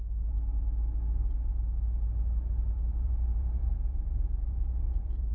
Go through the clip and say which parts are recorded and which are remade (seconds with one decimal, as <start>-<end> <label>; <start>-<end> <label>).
0.0-2.9 recorded; 2.9-5.3 remade